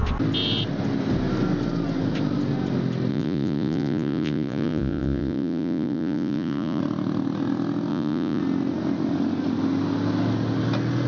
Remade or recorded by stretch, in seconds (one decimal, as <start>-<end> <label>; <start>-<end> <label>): 0.0-3.1 recorded; 3.1-6.8 remade; 6.8-7.9 recorded; 7.9-8.4 remade; 8.4-11.1 recorded